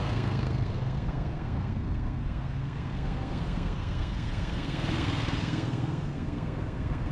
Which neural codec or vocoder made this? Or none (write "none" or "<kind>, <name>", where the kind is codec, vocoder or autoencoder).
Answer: codec, SNAC